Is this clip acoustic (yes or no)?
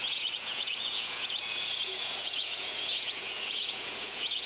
no